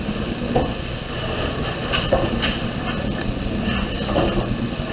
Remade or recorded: recorded